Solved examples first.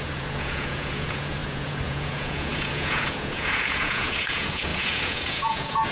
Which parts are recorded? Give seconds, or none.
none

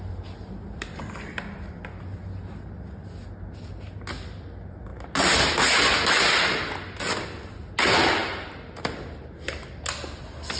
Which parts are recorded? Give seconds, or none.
0.0-8.2; 9.2-10.6

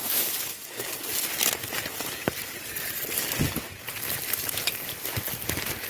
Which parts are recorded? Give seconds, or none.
0.9-5.9

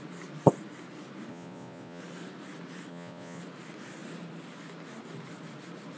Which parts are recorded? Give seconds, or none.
0.0-1.3; 2.0-2.9; 3.4-6.0